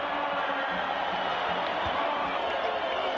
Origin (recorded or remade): recorded